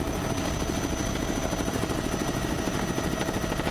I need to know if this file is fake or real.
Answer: real